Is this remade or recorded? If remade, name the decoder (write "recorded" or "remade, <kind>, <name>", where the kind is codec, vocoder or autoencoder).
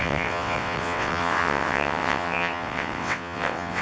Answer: remade, vocoder, WaveNeXt